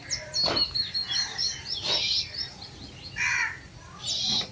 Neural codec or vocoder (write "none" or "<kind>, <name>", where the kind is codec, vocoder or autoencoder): none